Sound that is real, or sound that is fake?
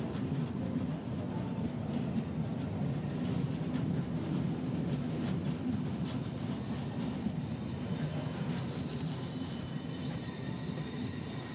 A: real